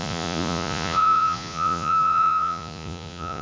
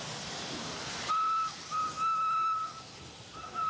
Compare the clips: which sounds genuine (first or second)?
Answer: second